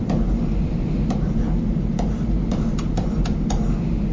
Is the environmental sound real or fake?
real